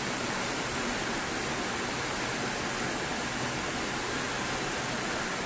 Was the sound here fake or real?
real